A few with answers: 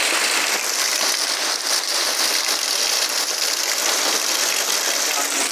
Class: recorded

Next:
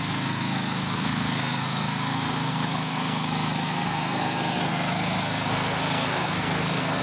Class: remade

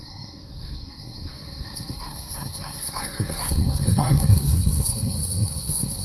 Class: remade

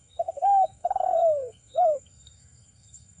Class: remade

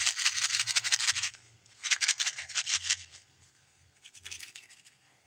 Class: remade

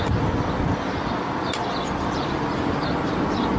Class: recorded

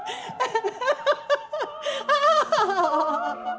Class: recorded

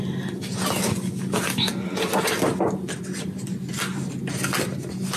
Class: recorded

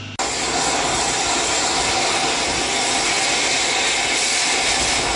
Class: recorded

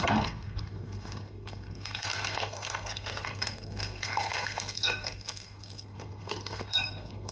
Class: remade